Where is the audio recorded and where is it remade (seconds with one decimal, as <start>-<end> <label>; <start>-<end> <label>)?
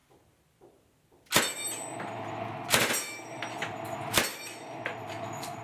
0.0-5.6 recorded